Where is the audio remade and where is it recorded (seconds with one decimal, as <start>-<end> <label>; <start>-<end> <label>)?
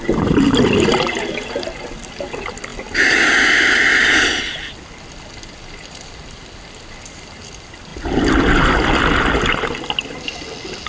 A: 0.0-10.9 recorded